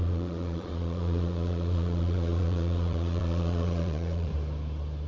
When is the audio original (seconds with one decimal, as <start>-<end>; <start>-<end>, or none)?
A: 4.3-5.1